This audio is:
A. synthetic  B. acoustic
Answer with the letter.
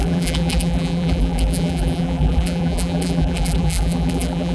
A